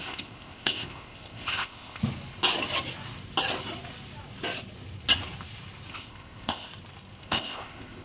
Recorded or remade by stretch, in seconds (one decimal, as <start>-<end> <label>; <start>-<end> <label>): 0.0-2.0 remade; 2.0-5.9 recorded; 5.9-6.7 remade; 6.7-7.2 recorded; 7.2-8.0 remade